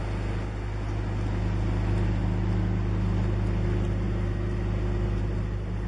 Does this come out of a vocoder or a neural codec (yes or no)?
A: no